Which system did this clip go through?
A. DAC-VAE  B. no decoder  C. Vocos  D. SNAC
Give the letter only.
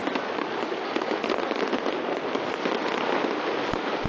B